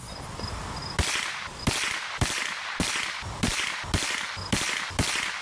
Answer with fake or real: real